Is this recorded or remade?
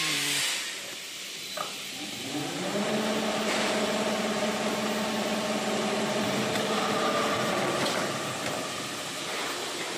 recorded